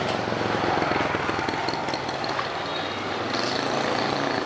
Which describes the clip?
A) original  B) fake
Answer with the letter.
A